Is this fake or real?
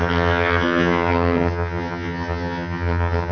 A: fake